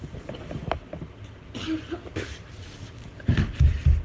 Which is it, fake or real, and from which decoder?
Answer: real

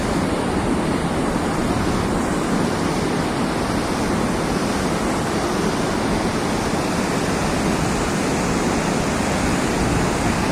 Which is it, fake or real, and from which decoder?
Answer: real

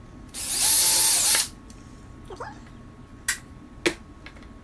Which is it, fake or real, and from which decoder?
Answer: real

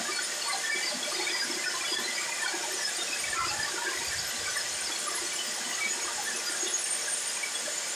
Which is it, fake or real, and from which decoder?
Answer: real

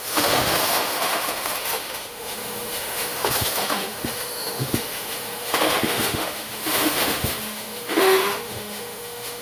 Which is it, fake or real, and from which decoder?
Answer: fake, autoencoder, DAC-VAE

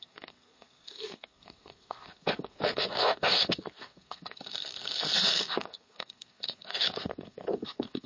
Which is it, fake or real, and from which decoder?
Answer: fake, codec, SNAC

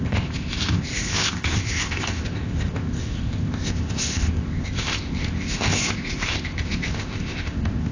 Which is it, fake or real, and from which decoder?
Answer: fake, codec, ZipCodec